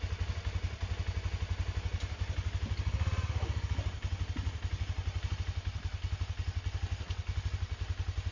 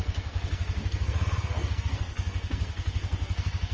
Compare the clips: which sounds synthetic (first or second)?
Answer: second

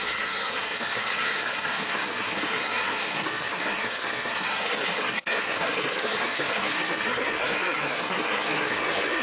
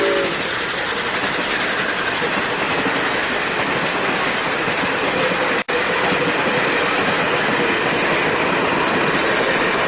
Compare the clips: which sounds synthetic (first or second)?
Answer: first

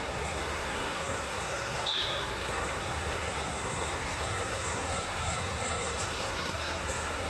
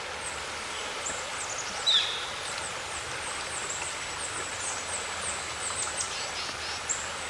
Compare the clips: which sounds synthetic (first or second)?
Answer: first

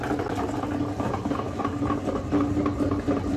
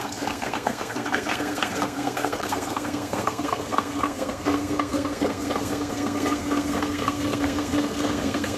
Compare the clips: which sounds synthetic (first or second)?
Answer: second